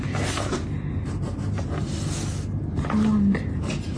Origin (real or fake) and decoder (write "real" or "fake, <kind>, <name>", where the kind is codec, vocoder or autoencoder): real